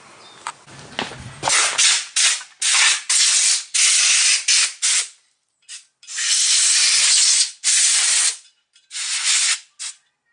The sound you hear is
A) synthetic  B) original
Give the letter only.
B